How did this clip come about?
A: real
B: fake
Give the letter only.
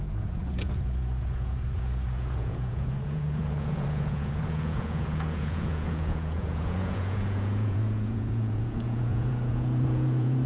B